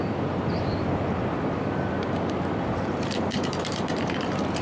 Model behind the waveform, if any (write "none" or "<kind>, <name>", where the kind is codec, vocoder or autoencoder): vocoder, BigVGAN v2